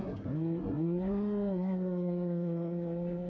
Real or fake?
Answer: fake